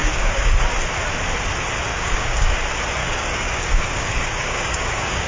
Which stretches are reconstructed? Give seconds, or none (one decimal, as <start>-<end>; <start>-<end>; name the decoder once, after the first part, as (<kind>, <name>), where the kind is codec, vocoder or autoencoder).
0.0-0.5 (codec, DAC); 1.9-2.6; 3.0-5.3